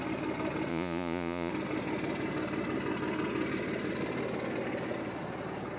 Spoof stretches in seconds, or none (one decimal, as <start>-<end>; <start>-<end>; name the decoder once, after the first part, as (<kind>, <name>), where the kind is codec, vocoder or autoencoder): 0.7-1.5 (vocoder, Vocos)